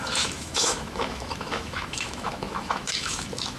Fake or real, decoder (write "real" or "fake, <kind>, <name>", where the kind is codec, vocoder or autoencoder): fake, autoencoder, DAC-VAE